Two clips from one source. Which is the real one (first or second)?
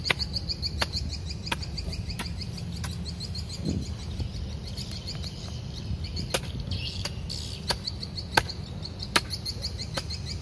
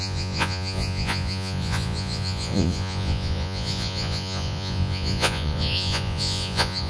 first